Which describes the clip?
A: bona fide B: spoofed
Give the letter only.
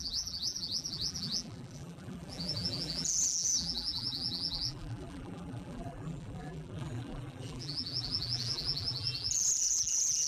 B